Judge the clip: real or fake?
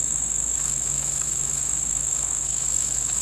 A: fake